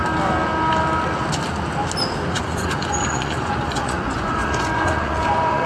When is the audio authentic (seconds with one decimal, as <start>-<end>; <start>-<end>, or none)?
0.0-2.3

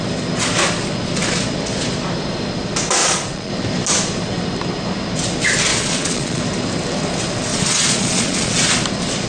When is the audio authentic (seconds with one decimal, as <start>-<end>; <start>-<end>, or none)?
0.0-3.0; 3.5-5.7; 6.4-7.5; 8.5-9.3

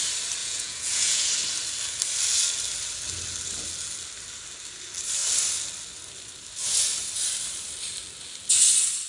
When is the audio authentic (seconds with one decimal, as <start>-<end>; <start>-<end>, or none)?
0.0-0.4; 1.3-9.1

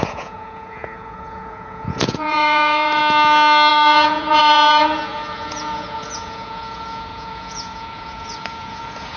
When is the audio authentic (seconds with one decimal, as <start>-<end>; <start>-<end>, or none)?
3.0-3.7

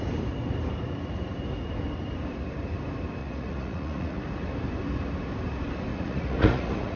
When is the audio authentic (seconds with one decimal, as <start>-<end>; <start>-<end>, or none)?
0.0-3.2; 4.2-5.9

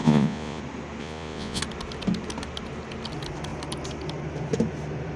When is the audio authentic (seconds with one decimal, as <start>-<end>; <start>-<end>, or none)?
0.6-1.0; 1.6-5.2

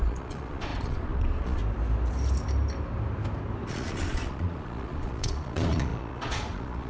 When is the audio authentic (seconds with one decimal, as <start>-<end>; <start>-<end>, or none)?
1.6-3.7

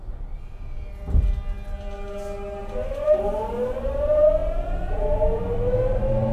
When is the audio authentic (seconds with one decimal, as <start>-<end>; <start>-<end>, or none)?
0.0-4.4; 5.4-6.3